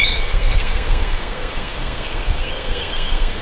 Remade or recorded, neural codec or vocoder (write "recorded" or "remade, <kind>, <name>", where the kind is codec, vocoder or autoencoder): remade, codec, SNAC